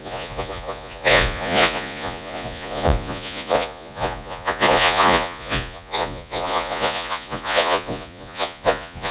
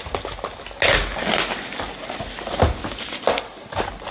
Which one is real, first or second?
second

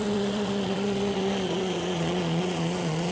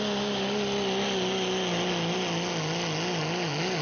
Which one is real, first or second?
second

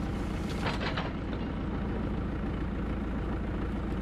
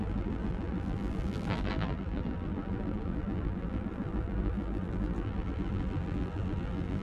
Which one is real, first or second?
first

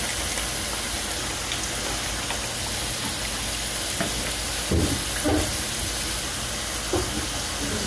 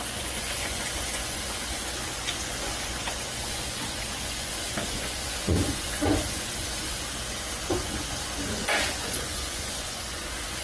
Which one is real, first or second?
first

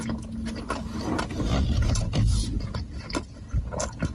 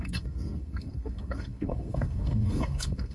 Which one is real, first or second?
first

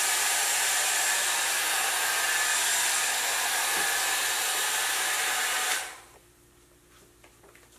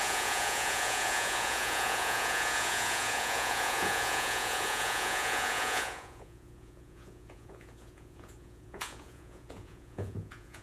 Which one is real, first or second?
first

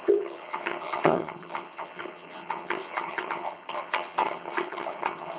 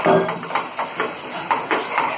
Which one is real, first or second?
second